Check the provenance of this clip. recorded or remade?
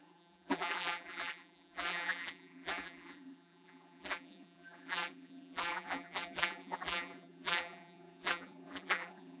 remade